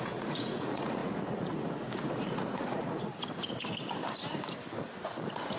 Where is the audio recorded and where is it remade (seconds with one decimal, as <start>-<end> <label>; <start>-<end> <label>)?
0.0-3.1 remade; 3.1-5.6 recorded